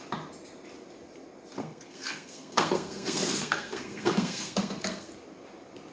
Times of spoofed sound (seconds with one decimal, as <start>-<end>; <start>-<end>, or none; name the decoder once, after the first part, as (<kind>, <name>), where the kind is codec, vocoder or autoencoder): 1.6-5.1 (codec, SNAC)